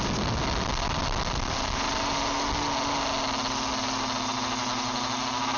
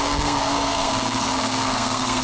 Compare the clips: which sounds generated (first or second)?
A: second